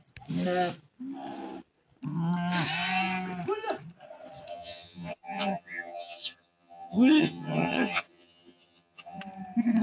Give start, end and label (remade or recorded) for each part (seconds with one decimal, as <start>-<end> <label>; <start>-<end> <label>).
0.0-4.5 recorded; 4.5-9.2 remade; 9.2-9.8 recorded